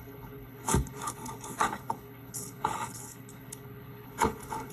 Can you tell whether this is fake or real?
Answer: fake